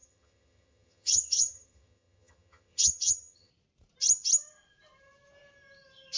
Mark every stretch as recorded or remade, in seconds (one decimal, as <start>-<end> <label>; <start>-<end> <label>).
0.0-3.5 remade; 3.5-6.2 recorded